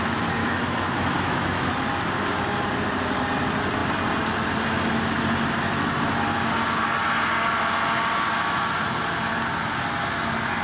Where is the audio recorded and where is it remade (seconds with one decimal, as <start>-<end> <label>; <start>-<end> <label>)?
0.0-0.4 recorded; 0.4-1.7 remade; 1.7-10.6 recorded